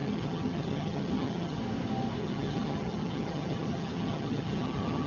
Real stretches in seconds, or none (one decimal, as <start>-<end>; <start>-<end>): 1.6-2.2